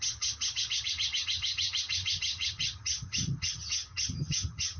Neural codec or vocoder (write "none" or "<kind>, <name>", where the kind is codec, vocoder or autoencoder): vocoder, HiFi-GAN